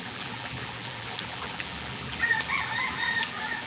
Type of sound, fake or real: fake